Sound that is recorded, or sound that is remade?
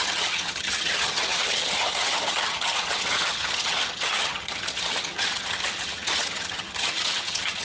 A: remade